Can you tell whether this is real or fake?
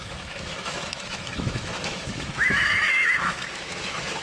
fake